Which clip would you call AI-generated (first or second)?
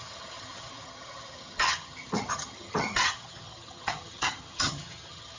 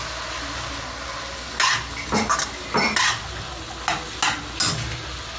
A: first